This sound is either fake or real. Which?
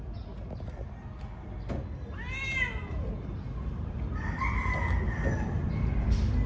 real